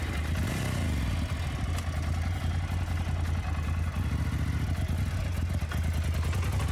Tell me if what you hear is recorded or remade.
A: recorded